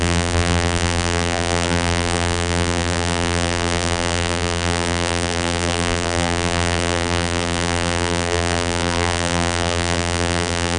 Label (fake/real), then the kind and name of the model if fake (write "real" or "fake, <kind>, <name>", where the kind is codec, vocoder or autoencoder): fake, vocoder, BigVGAN v2